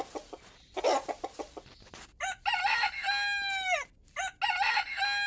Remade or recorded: recorded